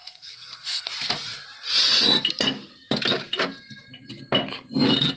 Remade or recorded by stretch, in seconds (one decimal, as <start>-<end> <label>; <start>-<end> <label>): 0.0-0.9 remade; 0.9-5.2 recorded

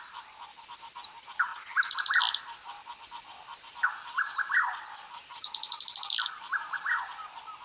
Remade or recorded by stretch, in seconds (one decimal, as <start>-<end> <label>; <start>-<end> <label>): 0.0-3.5 recorded; 3.5-7.6 remade